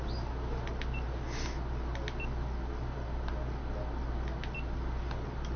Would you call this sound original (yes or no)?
yes